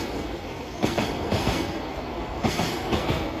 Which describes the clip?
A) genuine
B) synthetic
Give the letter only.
B